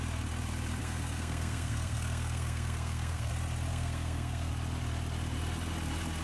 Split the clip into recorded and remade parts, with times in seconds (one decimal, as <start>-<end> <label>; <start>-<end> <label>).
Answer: 0.0-0.8 recorded; 0.8-3.3 remade; 3.3-3.7 recorded; 3.7-4.5 remade; 4.5-6.2 recorded